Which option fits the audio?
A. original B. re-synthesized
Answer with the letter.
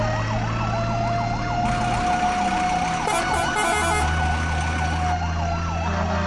A